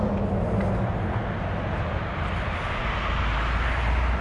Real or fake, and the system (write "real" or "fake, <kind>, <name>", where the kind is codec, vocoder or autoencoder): real